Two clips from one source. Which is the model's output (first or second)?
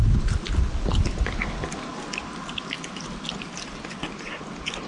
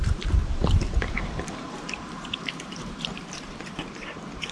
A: second